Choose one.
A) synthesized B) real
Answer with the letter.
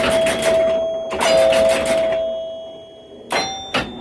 B